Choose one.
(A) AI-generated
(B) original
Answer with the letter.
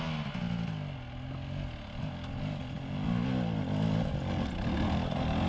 B